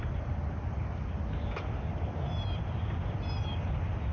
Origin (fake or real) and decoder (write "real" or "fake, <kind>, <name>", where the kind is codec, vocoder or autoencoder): real